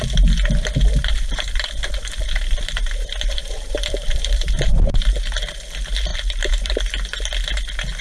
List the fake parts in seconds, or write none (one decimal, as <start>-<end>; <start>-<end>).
1.0-5.6; 6.1-6.7